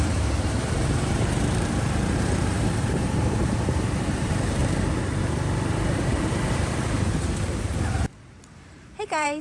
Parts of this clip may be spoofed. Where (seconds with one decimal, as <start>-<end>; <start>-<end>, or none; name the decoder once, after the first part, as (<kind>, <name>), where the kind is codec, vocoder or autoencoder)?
0.0-4.6 (vocoder, BigVGAN v2); 5.9-7.7; 8.7-9.4